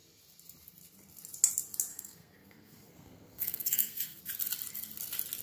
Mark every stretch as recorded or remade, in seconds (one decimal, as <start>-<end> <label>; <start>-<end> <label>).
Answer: 0.0-1.9 recorded; 1.9-4.2 remade; 4.2-5.4 recorded